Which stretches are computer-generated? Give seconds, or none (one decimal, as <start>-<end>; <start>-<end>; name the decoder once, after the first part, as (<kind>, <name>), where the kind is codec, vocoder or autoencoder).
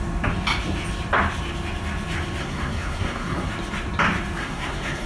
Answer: 2.4-3.5 (codec, SNAC); 4.4-5.1